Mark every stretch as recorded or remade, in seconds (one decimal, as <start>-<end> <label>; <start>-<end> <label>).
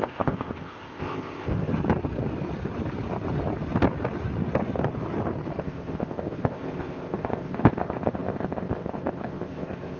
0.0-1.7 remade; 1.7-5.6 recorded; 5.6-10.0 remade